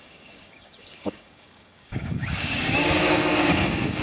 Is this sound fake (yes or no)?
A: yes